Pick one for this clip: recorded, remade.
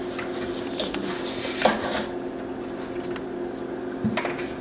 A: recorded